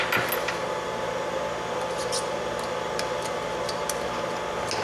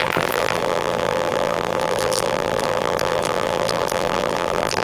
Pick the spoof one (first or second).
second